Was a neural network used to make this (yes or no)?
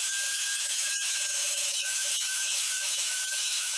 yes